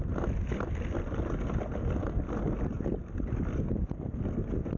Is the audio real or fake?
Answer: real